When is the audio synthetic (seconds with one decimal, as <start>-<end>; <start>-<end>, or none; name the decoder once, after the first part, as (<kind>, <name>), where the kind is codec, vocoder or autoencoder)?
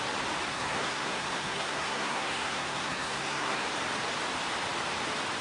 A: 0.5-3.7 (codec, SNAC)